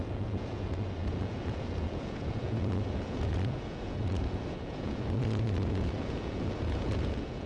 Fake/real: fake